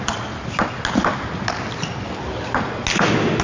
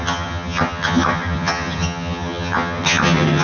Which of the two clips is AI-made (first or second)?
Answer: second